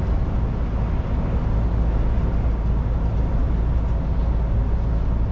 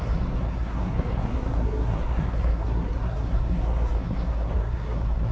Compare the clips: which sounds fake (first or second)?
second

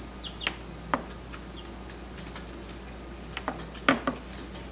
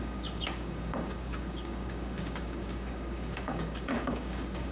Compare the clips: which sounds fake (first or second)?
second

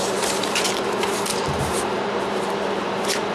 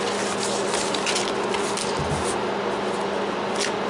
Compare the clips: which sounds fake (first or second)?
first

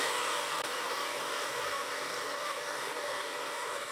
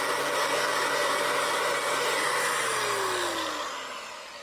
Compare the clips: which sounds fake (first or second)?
first